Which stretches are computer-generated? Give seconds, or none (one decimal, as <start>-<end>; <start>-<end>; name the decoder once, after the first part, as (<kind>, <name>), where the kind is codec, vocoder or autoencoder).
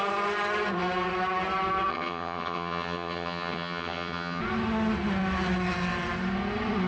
1.9-4.4 (vocoder, HiFi-GAN)